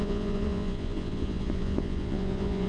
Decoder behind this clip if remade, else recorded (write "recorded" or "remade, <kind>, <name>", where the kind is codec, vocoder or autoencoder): remade, vocoder, Vocos